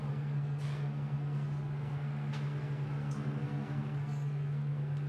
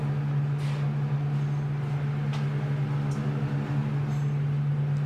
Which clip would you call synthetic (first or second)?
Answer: first